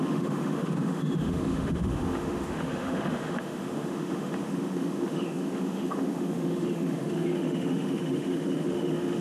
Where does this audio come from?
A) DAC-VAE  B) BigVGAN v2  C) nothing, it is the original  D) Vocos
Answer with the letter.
A